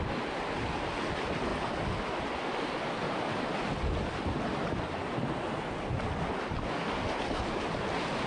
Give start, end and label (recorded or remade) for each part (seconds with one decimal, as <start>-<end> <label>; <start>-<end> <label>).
0.0-8.3 recorded